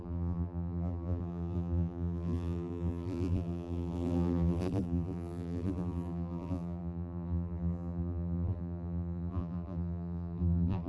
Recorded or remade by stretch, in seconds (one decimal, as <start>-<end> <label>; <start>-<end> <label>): 0.0-10.9 remade